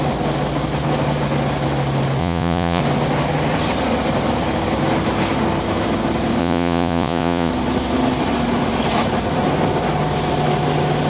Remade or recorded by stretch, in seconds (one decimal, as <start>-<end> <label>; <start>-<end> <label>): 0.0-2.2 recorded; 2.2-2.8 remade; 2.8-6.4 recorded; 6.4-7.5 remade; 7.5-11.1 recorded